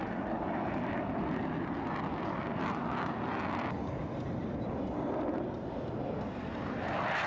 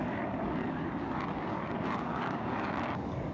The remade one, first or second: second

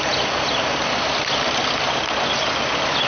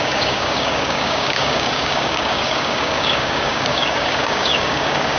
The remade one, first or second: second